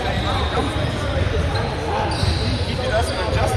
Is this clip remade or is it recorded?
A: recorded